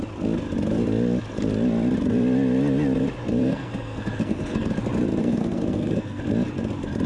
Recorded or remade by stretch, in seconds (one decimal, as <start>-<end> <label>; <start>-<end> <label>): 0.0-3.4 recorded; 3.4-4.7 remade; 4.7-5.2 recorded; 5.2-6.2 remade; 6.2-7.1 recorded